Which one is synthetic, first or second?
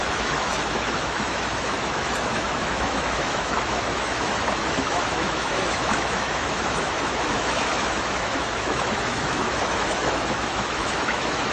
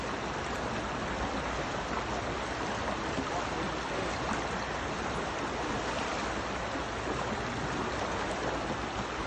first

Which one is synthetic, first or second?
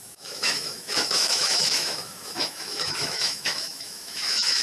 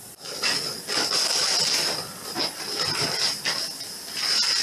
first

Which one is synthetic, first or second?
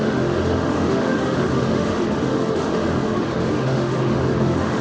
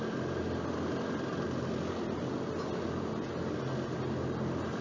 first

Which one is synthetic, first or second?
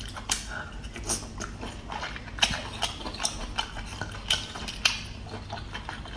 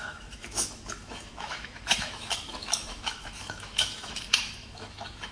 second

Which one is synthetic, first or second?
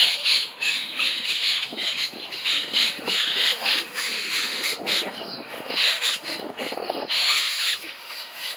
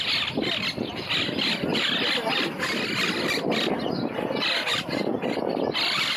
first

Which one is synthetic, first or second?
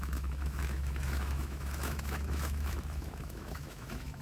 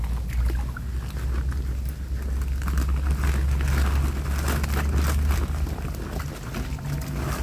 first